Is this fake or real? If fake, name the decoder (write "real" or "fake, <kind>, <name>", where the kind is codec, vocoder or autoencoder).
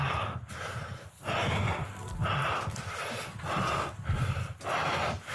real